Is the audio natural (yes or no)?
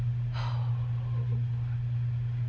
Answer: yes